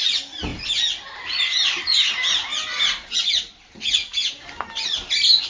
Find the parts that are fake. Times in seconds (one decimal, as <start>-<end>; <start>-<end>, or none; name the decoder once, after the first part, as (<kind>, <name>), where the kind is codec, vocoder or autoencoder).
none